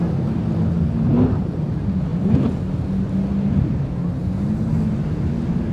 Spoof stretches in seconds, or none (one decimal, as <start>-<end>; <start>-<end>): 2.1-2.6